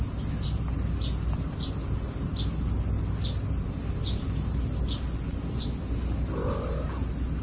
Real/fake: real